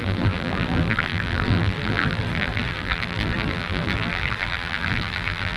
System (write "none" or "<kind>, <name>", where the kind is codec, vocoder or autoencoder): vocoder, BigVGAN v2